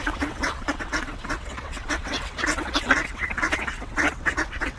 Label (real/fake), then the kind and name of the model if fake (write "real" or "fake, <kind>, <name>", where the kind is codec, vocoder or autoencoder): fake, vocoder, WaveNeXt